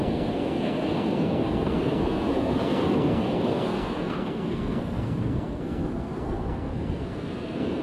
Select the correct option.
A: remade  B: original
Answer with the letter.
A